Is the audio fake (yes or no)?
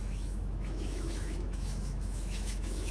yes